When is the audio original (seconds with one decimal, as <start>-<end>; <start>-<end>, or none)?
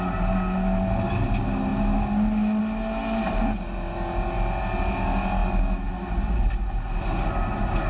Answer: 0.0-7.9